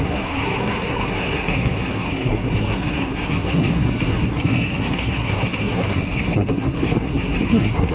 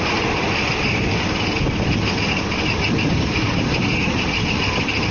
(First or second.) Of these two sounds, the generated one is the first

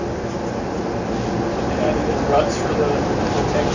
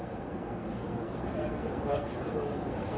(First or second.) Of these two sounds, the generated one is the second